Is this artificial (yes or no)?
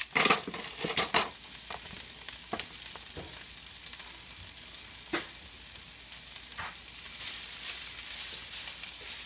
no